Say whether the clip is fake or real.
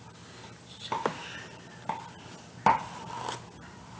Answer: real